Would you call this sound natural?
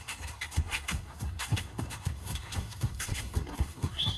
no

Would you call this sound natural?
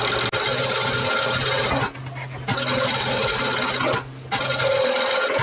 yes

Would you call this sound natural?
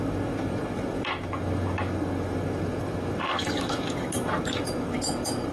no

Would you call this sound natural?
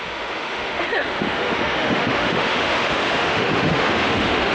no